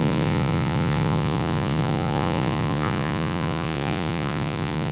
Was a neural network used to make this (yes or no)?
yes